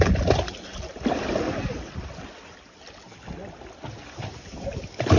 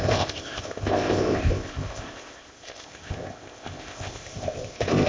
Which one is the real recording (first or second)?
first